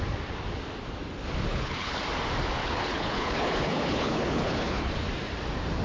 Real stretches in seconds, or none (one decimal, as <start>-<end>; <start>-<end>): 0.0-1.5; 2.0-2.6; 4.9-5.8